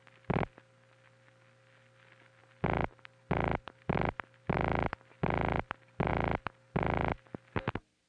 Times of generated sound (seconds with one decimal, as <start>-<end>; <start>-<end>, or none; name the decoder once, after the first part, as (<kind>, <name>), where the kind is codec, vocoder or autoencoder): none